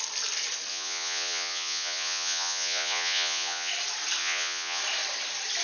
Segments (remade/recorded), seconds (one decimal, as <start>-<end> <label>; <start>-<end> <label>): 0.0-0.7 recorded; 0.7-3.7 remade; 3.7-4.2 recorded; 4.2-4.8 remade; 4.8-5.6 recorded